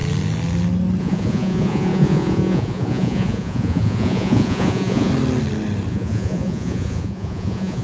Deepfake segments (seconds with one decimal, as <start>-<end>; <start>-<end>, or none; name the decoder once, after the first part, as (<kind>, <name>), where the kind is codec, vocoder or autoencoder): 1.0-5.1 (vocoder, Vocos); 5.9-7.8